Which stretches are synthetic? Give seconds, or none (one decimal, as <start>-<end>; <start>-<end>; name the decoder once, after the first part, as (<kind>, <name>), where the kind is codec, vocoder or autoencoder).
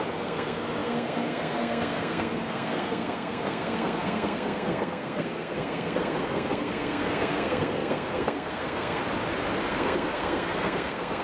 0.0-9.0 (codec, SNAC); 9.7-11.2